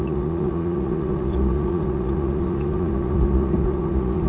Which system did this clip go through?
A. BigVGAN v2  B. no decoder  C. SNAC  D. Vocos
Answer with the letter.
D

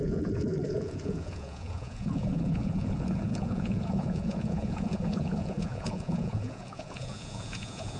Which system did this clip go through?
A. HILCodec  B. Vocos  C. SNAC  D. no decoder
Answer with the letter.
B